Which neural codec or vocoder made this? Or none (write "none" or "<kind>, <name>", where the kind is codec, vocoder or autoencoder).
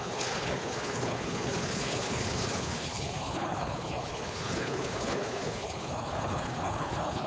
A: codec, HILCodec